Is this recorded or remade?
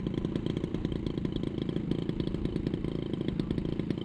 recorded